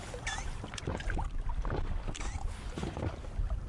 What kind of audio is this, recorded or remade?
remade